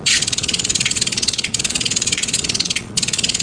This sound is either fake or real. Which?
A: fake